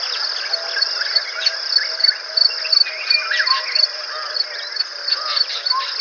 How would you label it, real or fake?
real